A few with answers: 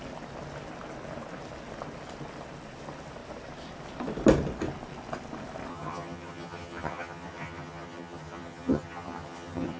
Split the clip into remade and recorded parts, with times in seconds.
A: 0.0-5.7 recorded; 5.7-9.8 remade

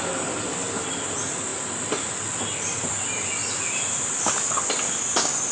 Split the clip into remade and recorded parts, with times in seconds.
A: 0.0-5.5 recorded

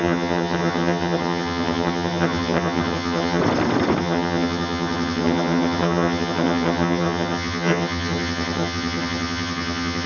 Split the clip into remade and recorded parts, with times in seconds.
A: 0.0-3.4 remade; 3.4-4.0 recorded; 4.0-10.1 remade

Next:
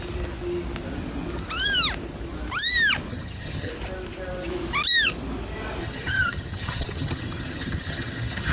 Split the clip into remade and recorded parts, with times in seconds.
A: 0.0-3.1 recorded; 3.1-3.7 remade; 3.7-5.8 recorded; 5.8-8.5 remade

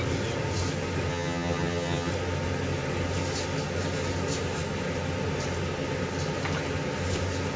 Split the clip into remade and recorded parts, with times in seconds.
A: 0.0-1.1 recorded; 1.1-2.1 remade; 2.1-7.6 recorded

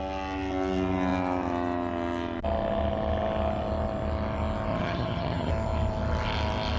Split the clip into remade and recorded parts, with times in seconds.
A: 0.0-4.7 recorded; 4.7-5.5 remade; 5.5-6.8 recorded

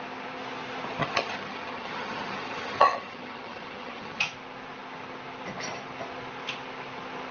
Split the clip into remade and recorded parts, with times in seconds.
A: 0.0-1.0 recorded; 1.0-4.2 remade; 4.2-7.3 recorded

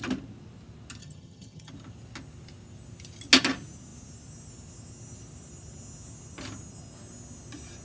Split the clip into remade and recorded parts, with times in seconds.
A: 0.0-1.0 recorded; 1.0-1.7 remade; 1.7-7.8 recorded